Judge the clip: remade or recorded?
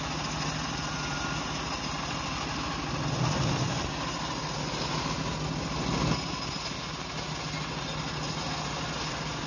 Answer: recorded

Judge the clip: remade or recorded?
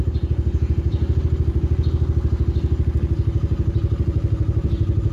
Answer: recorded